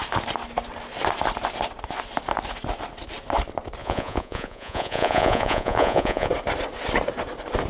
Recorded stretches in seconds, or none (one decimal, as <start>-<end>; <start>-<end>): 0.0-3.8; 6.3-7.7